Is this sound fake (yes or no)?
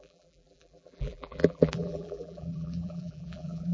yes